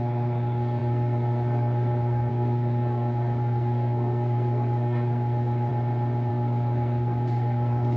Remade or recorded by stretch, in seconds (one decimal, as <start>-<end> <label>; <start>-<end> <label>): 0.0-5.7 remade; 5.7-6.3 recorded; 6.3-8.0 remade